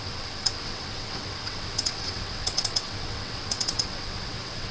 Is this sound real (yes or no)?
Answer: no